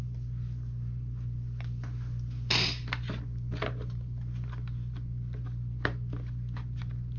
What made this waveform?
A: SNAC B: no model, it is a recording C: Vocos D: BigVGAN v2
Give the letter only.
B